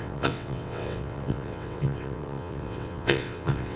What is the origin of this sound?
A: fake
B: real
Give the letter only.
A